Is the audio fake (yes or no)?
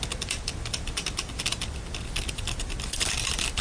no